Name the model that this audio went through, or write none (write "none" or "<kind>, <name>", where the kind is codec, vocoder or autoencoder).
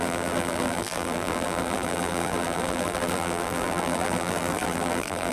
vocoder, BigVGAN v2